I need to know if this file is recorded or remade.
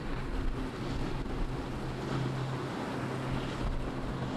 recorded